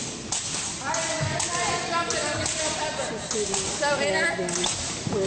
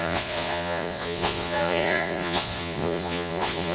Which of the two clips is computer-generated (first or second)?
second